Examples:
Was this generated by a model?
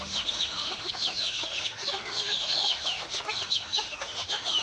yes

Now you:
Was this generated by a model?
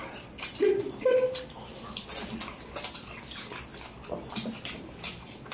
no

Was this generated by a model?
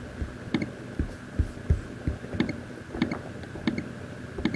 no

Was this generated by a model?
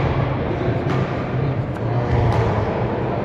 no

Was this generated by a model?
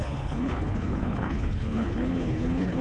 yes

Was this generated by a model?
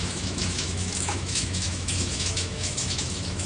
yes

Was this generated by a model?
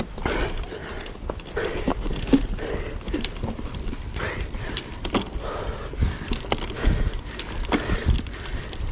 no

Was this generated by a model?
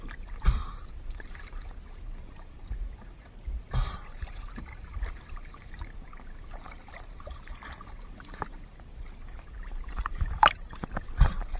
yes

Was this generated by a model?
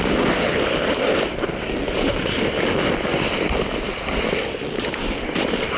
yes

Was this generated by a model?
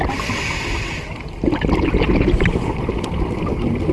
no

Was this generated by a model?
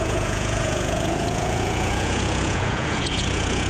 yes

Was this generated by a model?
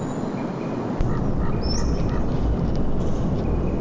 no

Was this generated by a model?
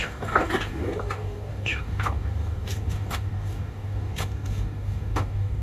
yes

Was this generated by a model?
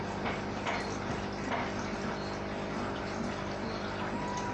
no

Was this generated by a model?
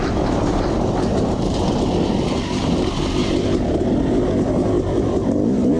no